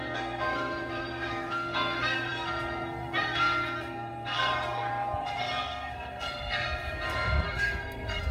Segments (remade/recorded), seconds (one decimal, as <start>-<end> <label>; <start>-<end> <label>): 0.0-8.3 remade